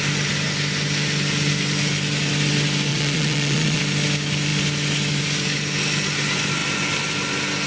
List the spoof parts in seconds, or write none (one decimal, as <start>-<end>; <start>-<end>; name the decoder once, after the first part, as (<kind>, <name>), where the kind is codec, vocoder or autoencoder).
2.9-3.8 (vocoder, Vocos)